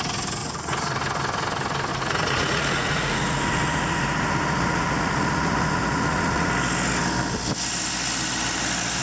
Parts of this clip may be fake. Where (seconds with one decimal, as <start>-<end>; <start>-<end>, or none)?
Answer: 0.4-1.0; 1.9-6.5